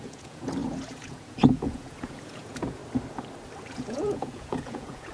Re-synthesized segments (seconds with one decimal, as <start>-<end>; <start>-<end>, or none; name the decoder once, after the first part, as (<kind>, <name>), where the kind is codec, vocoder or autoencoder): 0.0-2.8 (vocoder, Vocos); 3.7-5.1